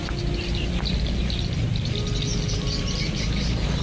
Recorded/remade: recorded